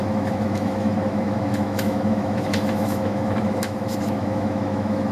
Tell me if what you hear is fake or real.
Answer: fake